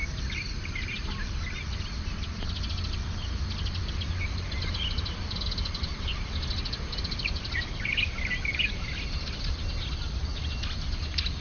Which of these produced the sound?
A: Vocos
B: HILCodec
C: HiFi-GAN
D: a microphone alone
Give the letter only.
D